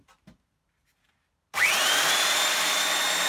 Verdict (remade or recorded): recorded